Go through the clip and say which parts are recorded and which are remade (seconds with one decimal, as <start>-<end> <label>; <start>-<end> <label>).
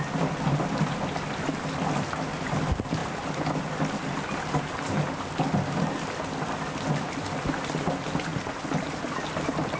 0.0-9.8 recorded